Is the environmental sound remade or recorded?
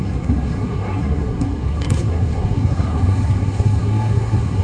remade